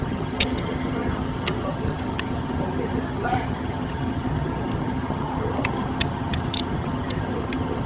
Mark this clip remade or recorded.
remade